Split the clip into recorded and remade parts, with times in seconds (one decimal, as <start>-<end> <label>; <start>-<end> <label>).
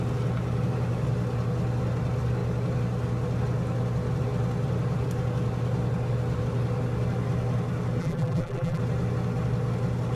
0.0-8.0 recorded; 8.0-8.8 remade; 8.8-10.2 recorded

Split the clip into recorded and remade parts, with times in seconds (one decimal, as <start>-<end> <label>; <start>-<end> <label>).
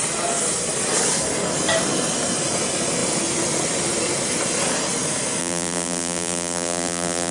0.0-5.4 recorded; 5.4-7.3 remade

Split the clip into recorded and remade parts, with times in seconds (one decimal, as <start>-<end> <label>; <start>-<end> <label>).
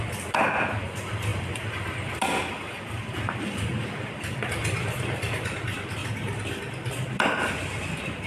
0.0-1.3 remade; 1.3-1.9 recorded; 1.9-6.0 remade; 6.0-7.4 recorded; 7.4-8.3 remade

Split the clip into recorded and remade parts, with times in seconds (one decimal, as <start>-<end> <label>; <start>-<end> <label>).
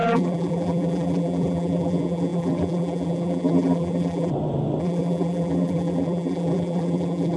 0.0-4.3 remade; 4.3-4.8 recorded; 4.8-7.4 remade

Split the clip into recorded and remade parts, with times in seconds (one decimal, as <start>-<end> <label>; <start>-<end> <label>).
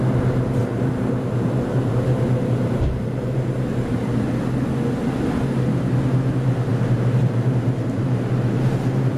0.0-0.6 recorded; 0.6-4.3 remade; 4.3-6.7 recorded; 6.7-8.6 remade; 8.6-9.2 recorded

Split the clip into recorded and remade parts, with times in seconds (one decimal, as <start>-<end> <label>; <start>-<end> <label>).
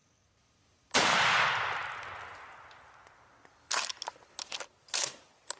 0.0-1.4 remade; 1.4-5.6 recorded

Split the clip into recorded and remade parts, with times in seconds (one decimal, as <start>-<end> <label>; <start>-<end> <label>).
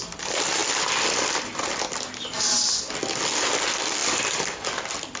0.0-4.0 recorded; 4.0-4.6 remade; 4.6-5.2 recorded